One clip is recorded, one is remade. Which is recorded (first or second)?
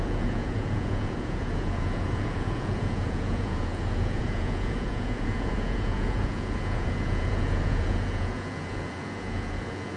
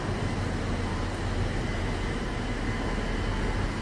second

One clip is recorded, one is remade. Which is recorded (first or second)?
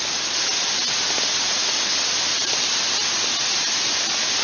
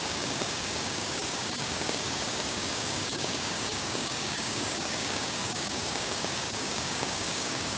first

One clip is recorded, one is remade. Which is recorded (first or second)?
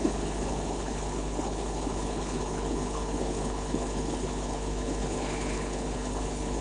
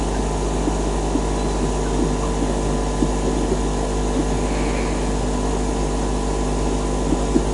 second